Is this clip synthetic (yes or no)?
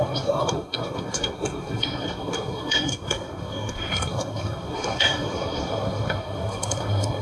yes